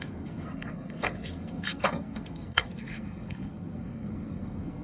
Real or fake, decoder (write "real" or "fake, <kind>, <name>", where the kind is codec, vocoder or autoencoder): fake, codec, SNAC